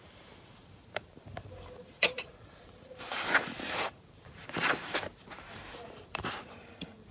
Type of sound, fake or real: fake